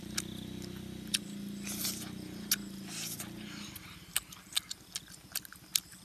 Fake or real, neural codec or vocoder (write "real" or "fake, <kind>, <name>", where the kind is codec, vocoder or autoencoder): real